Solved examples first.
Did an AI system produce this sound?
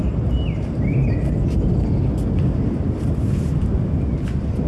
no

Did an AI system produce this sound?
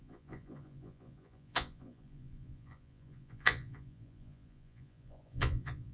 yes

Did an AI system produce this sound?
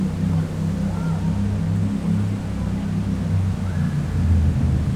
no